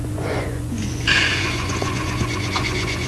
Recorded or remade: remade